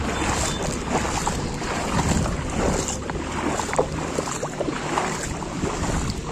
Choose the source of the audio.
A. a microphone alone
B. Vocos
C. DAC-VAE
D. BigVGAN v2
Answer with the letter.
A